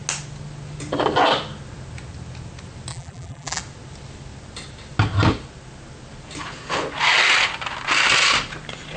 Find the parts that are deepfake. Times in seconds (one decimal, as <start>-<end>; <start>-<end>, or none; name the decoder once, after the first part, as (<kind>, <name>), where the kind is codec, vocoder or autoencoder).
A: 2.9-3.6 (vocoder, BigVGAN v2)